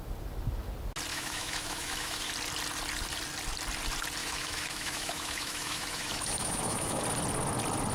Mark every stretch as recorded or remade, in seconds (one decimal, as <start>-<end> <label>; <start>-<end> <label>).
0.0-1.1 recorded; 1.1-2.3 remade; 2.3-4.2 recorded; 4.2-7.0 remade; 7.0-7.9 recorded